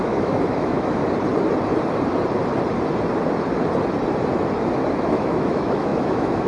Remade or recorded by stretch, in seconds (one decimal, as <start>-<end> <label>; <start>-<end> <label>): 0.0-1.0 remade; 1.0-4.9 recorded; 4.9-6.5 remade